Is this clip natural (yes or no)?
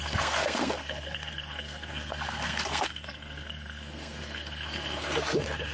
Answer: no